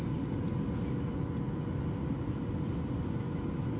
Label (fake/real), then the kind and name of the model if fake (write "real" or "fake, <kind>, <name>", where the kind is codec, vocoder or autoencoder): real